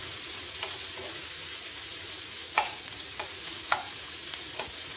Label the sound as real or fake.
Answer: fake